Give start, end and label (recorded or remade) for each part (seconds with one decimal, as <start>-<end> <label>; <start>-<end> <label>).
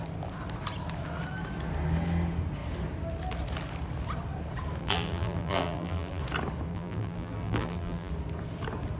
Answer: 0.0-4.8 recorded; 4.8-6.2 remade; 6.2-6.7 recorded; 6.7-8.1 remade; 8.1-9.0 recorded